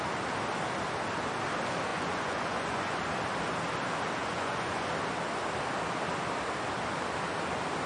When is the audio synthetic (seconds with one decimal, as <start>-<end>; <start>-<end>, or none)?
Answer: 1.9-3.0; 4.2-4.9